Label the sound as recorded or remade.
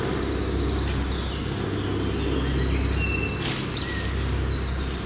recorded